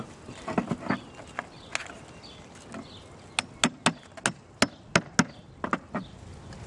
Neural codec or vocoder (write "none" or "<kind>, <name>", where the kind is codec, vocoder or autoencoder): none